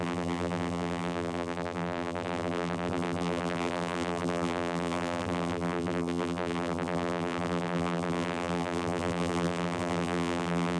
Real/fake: fake